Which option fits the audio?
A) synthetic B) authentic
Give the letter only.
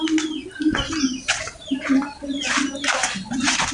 B